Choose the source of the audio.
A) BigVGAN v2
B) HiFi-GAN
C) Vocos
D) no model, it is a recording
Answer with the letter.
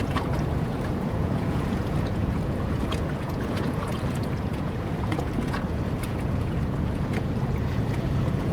C